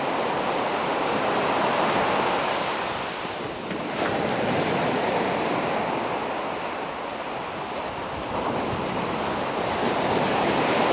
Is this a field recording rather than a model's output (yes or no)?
yes